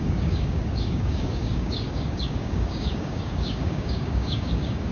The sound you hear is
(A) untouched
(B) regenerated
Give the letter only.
B